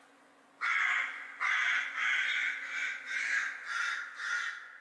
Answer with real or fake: fake